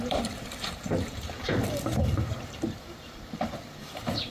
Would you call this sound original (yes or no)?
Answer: no